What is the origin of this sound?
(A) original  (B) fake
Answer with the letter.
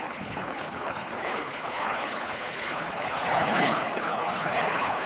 B